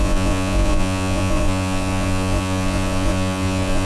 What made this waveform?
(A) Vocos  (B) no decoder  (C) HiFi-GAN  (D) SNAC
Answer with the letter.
A